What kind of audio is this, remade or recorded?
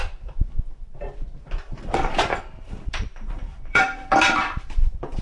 remade